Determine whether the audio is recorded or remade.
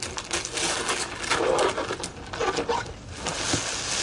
recorded